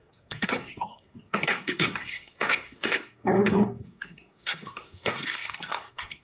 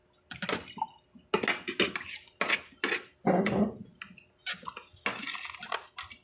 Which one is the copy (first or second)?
first